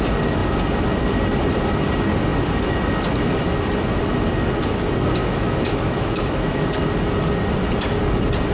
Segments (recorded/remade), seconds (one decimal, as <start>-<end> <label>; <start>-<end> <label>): 0.0-5.2 recorded; 5.2-6.6 remade; 6.6-8.5 recorded